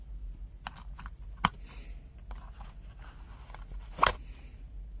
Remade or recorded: recorded